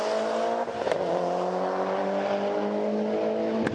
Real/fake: real